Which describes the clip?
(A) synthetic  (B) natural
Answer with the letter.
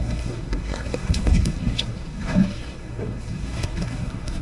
A